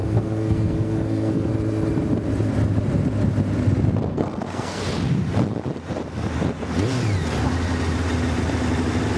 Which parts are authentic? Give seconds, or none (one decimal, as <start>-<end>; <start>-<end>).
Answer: 1.5-4.1; 4.8-9.2